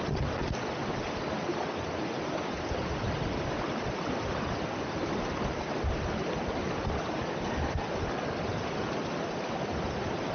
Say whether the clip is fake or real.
real